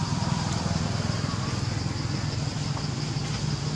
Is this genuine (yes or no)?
yes